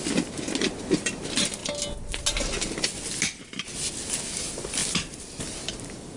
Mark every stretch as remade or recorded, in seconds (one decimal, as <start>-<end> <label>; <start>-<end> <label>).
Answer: 0.0-6.2 recorded